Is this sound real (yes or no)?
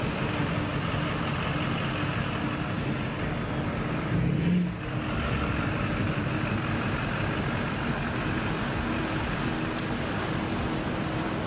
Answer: yes